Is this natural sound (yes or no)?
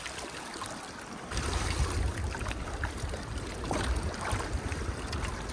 yes